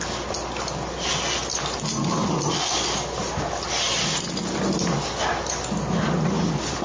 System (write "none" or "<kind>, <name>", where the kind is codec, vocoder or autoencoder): none